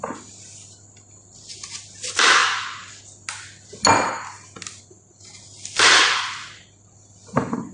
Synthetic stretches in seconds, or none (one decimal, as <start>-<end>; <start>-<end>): none